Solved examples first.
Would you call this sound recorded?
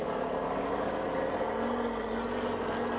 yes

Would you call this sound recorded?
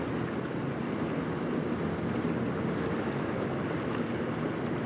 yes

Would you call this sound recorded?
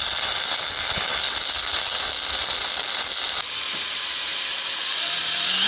yes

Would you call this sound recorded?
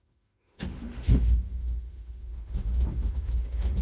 no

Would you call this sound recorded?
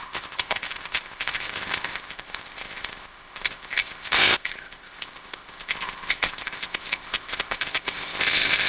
no